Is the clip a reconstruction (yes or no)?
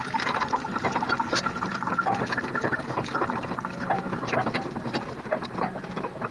yes